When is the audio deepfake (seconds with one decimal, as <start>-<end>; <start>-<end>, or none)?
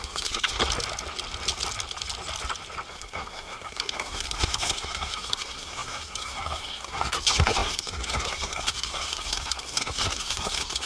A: 0.0-0.6; 2.9-10.9